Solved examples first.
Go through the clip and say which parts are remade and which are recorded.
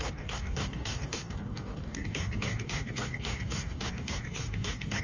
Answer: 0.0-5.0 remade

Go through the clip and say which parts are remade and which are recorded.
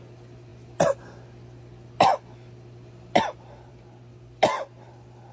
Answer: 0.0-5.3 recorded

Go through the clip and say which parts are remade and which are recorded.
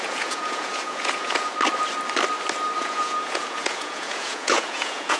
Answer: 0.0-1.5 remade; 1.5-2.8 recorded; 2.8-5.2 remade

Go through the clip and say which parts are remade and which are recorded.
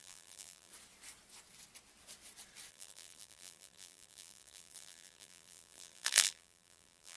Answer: 0.0-0.7 remade; 0.7-2.7 recorded; 2.7-7.2 remade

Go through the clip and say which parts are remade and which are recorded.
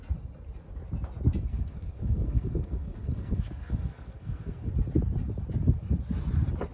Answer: 0.0-1.5 recorded; 1.5-4.7 remade; 4.7-6.7 recorded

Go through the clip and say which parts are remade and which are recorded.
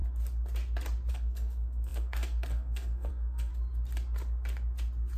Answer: 0.0-1.1 recorded; 1.1-3.5 remade; 3.5-5.2 recorded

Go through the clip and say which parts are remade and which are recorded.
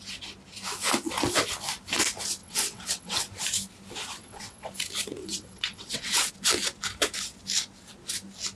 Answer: 0.0-2.4 recorded; 2.4-3.2 remade; 3.2-4.2 recorded; 4.2-4.7 remade; 4.7-5.2 recorded; 5.2-6.3 remade; 6.3-8.6 recorded